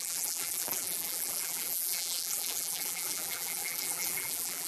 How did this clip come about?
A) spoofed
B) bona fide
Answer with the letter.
A